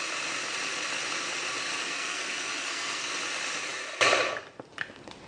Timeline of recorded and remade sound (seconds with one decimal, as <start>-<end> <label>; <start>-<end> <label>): 0.0-1.7 recorded; 1.7-3.1 remade; 3.1-5.3 recorded